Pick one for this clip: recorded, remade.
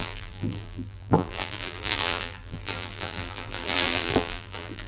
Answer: remade